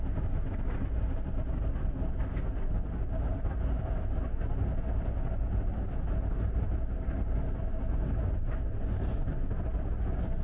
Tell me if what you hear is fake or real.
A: real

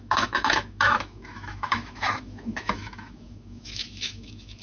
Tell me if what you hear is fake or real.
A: fake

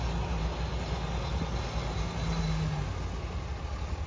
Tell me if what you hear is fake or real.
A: real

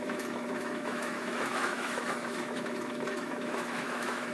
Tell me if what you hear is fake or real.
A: fake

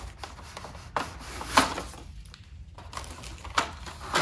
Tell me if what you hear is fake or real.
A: real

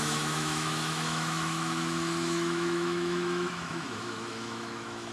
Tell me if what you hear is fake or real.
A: fake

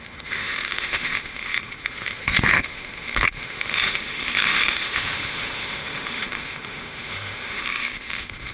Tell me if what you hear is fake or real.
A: fake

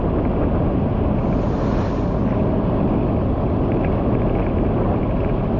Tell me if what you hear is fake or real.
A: real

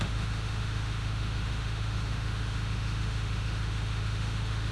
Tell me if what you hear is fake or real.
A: fake